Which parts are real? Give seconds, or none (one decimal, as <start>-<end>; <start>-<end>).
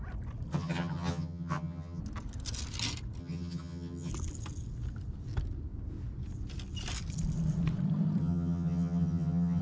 0.0-0.5; 2.0-3.2; 4.1-8.2